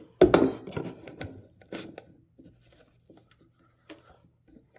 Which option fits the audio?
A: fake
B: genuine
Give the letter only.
B